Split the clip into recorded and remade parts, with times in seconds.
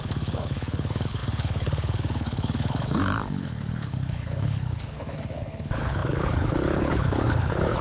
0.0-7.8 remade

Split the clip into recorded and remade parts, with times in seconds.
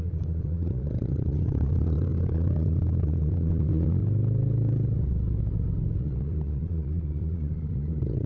0.0-4.0 remade; 4.0-6.0 recorded; 6.0-8.3 remade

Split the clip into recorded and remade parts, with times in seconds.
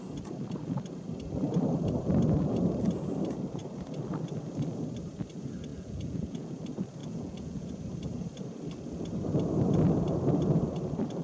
0.0-5.7 recorded; 5.7-6.5 remade; 6.5-7.0 recorded; 7.0-7.7 remade; 7.7-11.2 recorded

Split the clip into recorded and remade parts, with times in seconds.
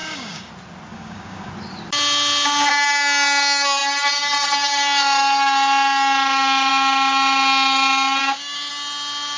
0.0-0.5 remade; 0.5-0.9 recorded; 0.9-1.5 remade; 1.5-8.2 recorded; 8.2-8.7 remade; 8.7-9.4 recorded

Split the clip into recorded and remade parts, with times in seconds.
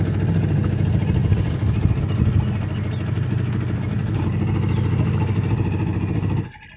0.0-6.8 recorded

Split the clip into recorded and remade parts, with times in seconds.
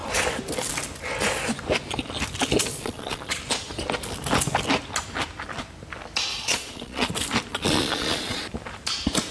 0.0-2.7 recorded; 2.7-3.4 remade; 3.4-6.3 recorded; 6.3-7.1 remade; 7.1-7.5 recorded; 7.5-8.4 remade; 8.4-9.3 recorded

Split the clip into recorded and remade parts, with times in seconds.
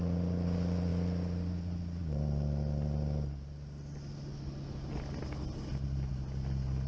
0.0-6.9 recorded